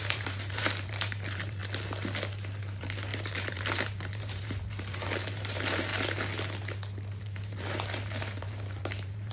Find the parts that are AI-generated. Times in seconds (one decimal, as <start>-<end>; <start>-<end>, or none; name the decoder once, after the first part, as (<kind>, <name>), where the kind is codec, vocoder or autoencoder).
0.0-1.6 (vocoder, BigVGAN v2); 2.6-5.9; 7.2-9.3